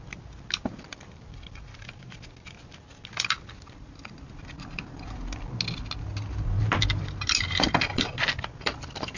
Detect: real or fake real